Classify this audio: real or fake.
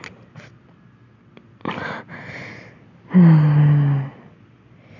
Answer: real